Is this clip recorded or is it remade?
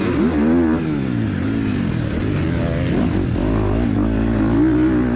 recorded